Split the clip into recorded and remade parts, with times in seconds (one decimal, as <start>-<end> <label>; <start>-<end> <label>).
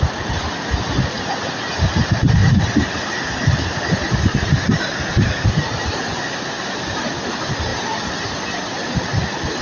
0.0-9.6 recorded